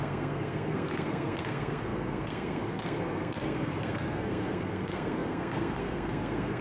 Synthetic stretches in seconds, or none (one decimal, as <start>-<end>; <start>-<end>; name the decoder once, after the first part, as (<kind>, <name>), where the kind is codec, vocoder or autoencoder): 0.0-6.6 (codec, SNAC)

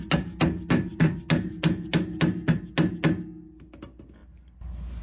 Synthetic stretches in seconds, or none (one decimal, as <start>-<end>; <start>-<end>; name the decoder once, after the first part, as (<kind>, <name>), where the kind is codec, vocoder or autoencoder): none

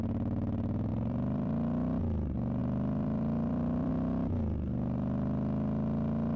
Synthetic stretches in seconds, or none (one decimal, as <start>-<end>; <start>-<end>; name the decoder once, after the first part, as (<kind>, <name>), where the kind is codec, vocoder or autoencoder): 0.9-2.0 (vocoder, BigVGAN v2); 2.6-3.9

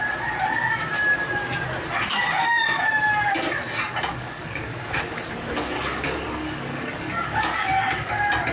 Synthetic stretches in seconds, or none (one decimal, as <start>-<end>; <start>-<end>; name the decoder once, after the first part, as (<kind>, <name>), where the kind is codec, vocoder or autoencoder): 4.1-8.1 (codec, DAC)

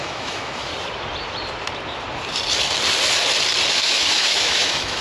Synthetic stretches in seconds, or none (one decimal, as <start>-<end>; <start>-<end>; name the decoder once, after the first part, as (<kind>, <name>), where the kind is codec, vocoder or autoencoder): 0.0-0.7 (autoencoder, DAC-VAE); 3.7-5.0